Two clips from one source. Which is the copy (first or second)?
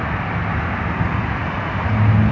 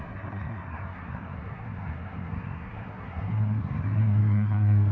second